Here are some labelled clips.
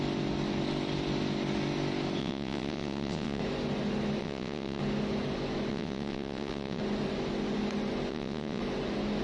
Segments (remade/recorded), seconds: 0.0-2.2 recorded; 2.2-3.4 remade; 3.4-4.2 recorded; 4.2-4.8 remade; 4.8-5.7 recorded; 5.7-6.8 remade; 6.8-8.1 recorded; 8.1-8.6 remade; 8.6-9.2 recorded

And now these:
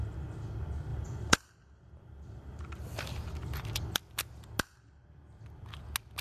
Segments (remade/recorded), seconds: 0.0-0.9 recorded; 0.9-4.6 remade; 4.6-6.2 recorded

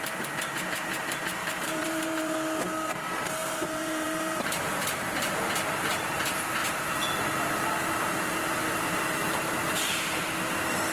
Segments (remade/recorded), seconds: 0.0-1.4 recorded; 1.4-2.2 remade; 2.2-3.4 recorded; 3.4-5.4 remade; 5.4-6.6 recorded; 6.6-10.0 remade; 10.0-10.9 recorded

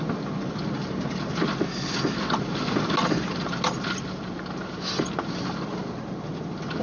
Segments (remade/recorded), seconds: 0.0-6.8 recorded

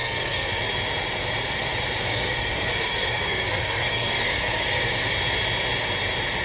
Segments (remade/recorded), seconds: 0.0-0.6 remade; 0.6-2.1 recorded; 2.1-4.9 remade; 4.9-6.4 recorded